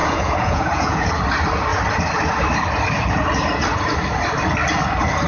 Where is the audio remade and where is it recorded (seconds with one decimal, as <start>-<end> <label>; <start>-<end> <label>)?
0.0-1.1 remade; 1.1-5.3 recorded